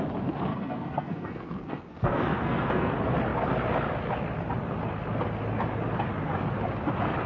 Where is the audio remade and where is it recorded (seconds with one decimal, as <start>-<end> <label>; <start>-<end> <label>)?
0.0-0.5 recorded; 0.5-2.9 remade; 2.9-7.3 recorded

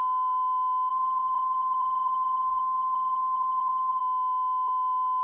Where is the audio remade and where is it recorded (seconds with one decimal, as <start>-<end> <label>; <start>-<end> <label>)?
0.0-0.9 recorded; 0.9-4.0 remade; 4.0-5.2 recorded